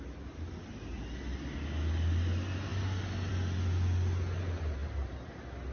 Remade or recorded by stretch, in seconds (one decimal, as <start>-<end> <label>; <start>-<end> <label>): 0.0-5.7 recorded

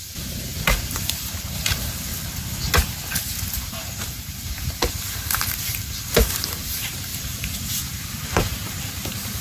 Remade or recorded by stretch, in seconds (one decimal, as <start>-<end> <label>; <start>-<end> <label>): 0.0-2.1 remade; 2.1-3.0 recorded; 3.0-9.4 remade

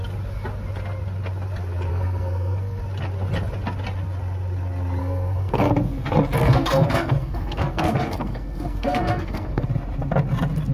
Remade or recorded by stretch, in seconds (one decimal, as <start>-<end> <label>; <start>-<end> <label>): 0.0-1.9 recorded; 1.9-2.8 remade; 2.8-5.0 recorded; 5.0-5.7 remade; 5.7-6.4 recorded; 6.4-9.7 remade; 9.7-10.7 recorded

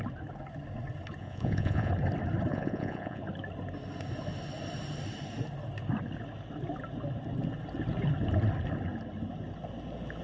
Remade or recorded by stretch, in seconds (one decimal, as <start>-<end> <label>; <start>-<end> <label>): 0.0-1.2 recorded; 1.2-1.9 remade; 1.9-2.5 recorded; 2.5-3.2 remade; 3.2-10.2 recorded

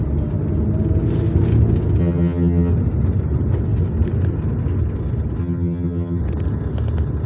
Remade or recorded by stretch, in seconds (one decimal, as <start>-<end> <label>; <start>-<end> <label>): 0.0-2.0 recorded; 2.0-2.7 remade; 2.7-5.4 recorded; 5.4-6.2 remade; 6.2-7.3 recorded

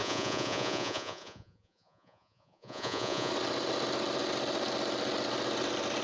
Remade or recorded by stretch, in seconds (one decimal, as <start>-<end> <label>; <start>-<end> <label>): 0.0-3.3 remade; 3.3-6.0 recorded

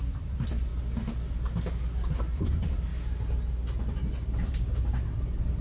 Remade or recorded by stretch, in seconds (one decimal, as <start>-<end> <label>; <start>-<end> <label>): 0.0-0.7 remade; 0.7-2.2 recorded; 2.2-2.9 remade; 2.9-4.5 recorded; 4.5-5.6 remade

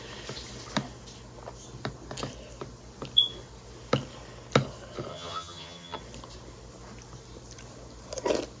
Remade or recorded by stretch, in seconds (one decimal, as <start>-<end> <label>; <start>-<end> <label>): 0.0-5.1 recorded; 5.1-6.0 remade; 6.0-8.6 recorded